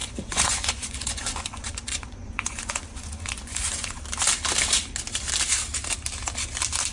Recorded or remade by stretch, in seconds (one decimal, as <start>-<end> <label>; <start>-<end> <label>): 0.0-4.0 remade; 4.0-6.9 recorded